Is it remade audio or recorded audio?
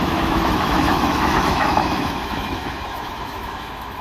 remade